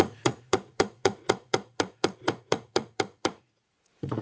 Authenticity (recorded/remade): remade